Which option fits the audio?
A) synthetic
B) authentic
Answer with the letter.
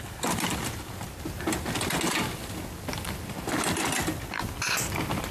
B